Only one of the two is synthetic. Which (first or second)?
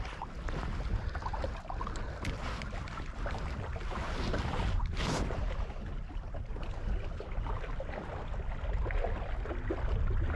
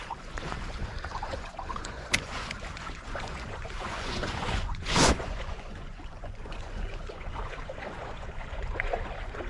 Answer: second